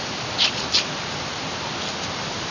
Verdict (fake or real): real